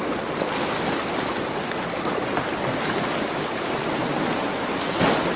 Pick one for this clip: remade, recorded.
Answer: recorded